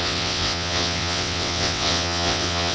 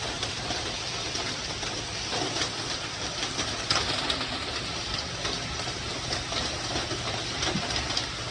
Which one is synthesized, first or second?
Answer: first